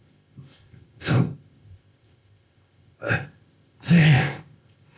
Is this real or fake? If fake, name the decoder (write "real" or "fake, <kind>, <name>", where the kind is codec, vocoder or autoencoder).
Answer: fake, codec, ZipCodec